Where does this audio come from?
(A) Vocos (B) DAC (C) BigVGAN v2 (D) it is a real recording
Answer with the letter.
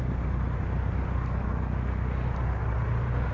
D